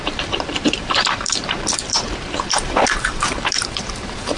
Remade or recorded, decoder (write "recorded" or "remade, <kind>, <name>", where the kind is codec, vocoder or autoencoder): remade, vocoder, BigVGAN v2